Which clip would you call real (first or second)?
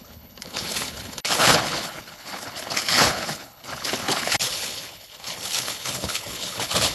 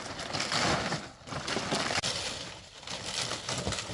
second